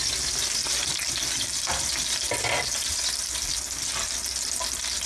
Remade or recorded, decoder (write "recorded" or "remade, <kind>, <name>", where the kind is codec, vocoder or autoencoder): recorded